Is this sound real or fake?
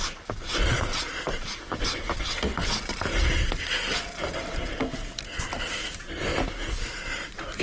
real